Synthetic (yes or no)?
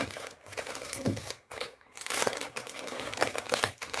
yes